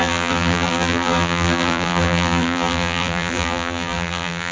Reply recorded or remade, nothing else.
remade